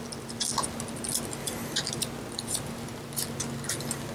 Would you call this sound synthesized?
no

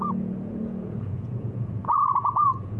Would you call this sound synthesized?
yes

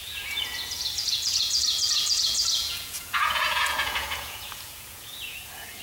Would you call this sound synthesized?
yes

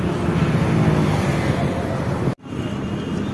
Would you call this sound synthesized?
no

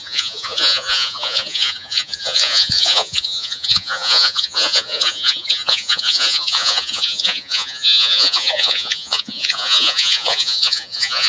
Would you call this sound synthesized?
yes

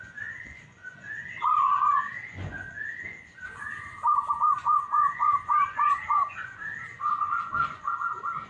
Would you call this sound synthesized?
yes